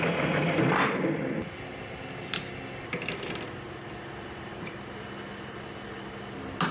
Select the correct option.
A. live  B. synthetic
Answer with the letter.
A